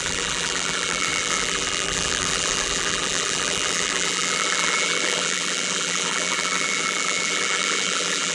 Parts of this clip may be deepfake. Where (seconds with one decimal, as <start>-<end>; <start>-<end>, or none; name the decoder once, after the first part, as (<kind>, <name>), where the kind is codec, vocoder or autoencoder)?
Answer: 0.0-8.3 (vocoder, BigVGAN v2)

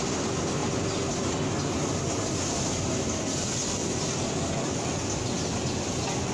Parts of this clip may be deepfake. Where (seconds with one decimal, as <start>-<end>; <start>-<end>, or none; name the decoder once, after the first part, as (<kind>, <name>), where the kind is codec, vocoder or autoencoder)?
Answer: none

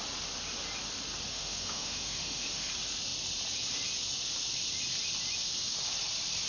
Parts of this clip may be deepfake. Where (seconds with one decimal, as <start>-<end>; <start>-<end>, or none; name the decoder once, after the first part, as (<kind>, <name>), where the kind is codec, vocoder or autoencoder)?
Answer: 1.3-2.7 (autoencoder, DAC-VAE)

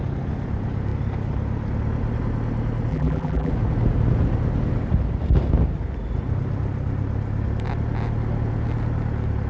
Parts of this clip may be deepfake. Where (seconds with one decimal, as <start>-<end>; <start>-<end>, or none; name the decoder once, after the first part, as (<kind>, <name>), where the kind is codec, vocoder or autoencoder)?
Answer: 2.9-3.5 (vocoder, BigVGAN v2)

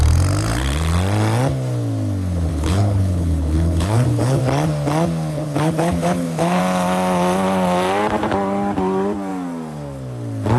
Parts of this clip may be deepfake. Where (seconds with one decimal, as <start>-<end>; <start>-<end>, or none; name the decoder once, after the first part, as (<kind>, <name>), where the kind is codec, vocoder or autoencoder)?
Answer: 2.5-4.4 (codec, HILCodec); 5.3-6.6